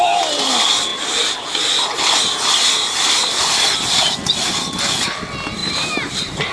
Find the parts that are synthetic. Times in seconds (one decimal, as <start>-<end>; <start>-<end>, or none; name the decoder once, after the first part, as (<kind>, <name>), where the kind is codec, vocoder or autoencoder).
5.6-6.5 (vocoder, BigVGAN v2)